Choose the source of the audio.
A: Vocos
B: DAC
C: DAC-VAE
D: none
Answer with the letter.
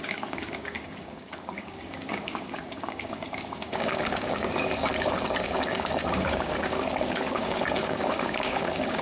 B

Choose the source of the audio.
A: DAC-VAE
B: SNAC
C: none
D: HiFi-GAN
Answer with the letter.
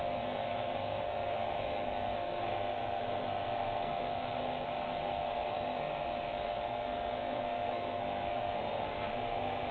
B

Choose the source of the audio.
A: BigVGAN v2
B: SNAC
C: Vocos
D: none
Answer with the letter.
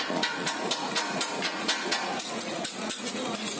C